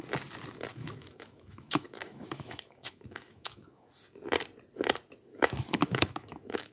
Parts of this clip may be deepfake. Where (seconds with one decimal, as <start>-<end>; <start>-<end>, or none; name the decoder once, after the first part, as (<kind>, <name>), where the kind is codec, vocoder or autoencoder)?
0.7-3.9 (autoencoder, DAC-VAE); 5.3-6.7